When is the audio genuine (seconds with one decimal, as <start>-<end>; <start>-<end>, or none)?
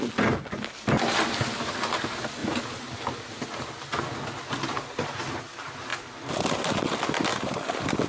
0.0-8.1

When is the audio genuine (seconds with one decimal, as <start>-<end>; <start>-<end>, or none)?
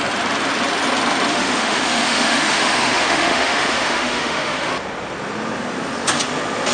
0.0-1.3; 4.7-6.7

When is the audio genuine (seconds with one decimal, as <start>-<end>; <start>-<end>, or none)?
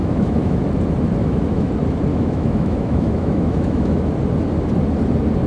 0.6-1.2; 1.7-2.1; 4.1-5.5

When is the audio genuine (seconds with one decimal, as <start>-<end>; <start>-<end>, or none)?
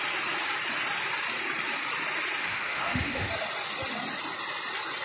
0.0-2.4; 3.3-5.0